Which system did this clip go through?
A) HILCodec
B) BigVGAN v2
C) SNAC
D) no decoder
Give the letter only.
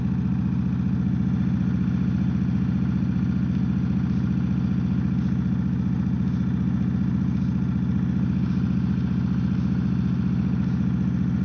D